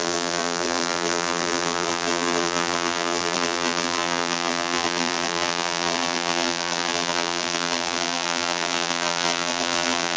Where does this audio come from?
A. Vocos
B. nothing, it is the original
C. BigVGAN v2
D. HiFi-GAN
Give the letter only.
C